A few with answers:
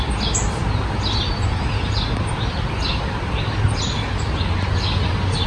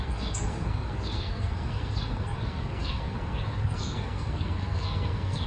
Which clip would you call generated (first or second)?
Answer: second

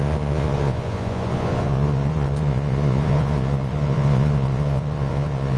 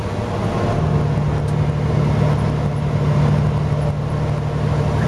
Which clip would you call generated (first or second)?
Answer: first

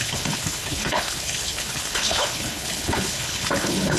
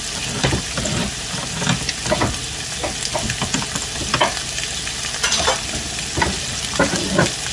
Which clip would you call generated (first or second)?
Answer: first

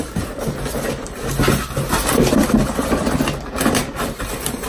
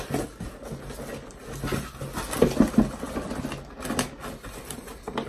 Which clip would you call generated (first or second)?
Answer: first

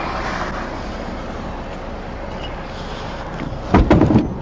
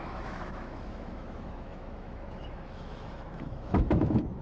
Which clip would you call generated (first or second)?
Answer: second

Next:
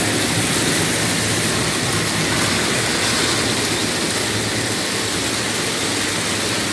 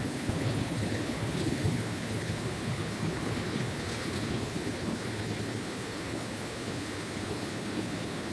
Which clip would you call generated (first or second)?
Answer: second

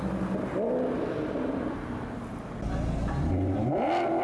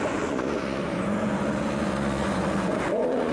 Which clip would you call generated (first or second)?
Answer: second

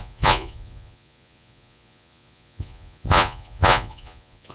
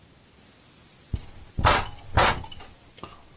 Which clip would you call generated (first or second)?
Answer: first